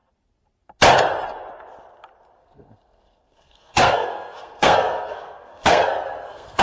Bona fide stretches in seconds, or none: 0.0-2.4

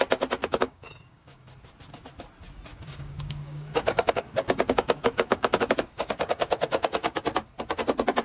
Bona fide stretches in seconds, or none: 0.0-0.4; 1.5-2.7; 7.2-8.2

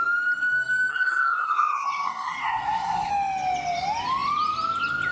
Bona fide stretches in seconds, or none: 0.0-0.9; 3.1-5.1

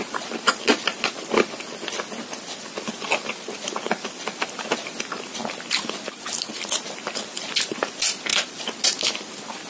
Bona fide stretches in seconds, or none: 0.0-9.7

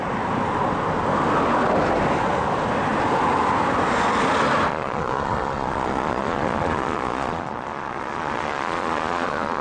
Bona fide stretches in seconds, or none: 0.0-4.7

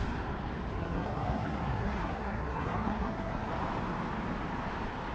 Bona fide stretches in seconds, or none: 0.0-0.8; 3.5-5.1

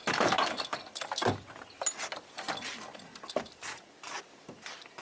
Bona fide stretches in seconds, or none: 0.0-5.0

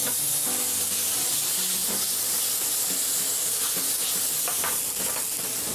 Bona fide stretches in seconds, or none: 0.0-5.7